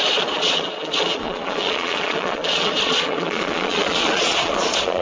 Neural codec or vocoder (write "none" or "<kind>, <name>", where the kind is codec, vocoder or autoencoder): vocoder, Vocos